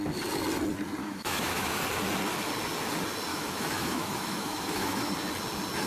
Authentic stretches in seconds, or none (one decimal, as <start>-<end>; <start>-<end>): 0.0-1.0; 1.8-3.3; 5.1-5.9